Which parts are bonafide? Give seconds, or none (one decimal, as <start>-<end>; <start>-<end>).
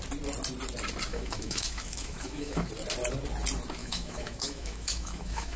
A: 0.0-1.1; 2.7-3.8